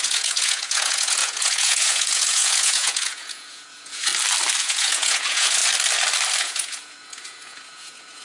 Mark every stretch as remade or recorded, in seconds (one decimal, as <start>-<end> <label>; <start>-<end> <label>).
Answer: 0.0-4.1 remade; 4.1-4.6 recorded; 4.6-5.6 remade; 5.6-6.4 recorded; 6.4-8.2 remade